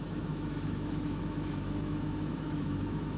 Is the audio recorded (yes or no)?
no